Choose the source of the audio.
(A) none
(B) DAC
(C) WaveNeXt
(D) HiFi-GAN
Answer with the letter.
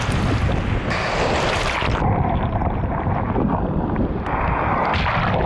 A